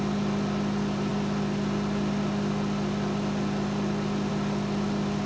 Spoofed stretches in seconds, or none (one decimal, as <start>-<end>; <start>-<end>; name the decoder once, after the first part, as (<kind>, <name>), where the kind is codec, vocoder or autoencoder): none